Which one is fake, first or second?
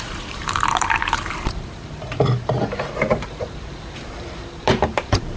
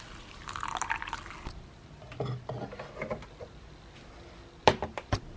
first